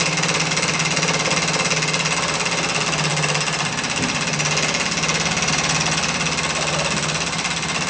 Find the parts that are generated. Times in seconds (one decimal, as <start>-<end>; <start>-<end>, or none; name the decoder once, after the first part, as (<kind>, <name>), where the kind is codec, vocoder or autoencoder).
none

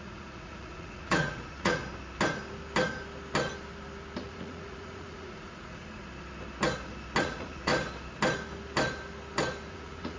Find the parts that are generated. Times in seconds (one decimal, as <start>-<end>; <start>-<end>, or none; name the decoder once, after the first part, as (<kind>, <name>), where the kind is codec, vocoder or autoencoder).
0.0-1.8 (vocoder, Vocos); 4.2-6.0; 7.2-7.7; 9.7-10.2

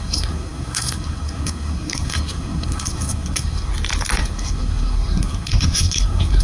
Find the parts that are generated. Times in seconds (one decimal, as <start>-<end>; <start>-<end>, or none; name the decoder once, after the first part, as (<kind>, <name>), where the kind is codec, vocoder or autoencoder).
0.0-3.7 (codec, SNAC); 4.2-6.4

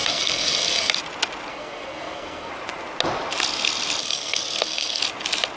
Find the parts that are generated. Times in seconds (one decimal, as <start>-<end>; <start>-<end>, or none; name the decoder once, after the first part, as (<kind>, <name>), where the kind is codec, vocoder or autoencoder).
0.0-0.9 (codec, SNAC); 1.5-2.5; 4.0-5.0